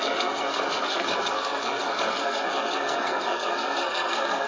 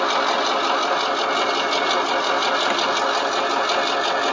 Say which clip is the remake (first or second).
first